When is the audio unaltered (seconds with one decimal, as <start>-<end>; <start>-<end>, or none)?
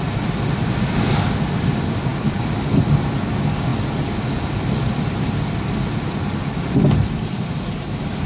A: 0.0-8.3